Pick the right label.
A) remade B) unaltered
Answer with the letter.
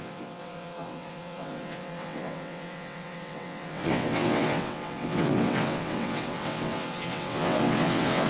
A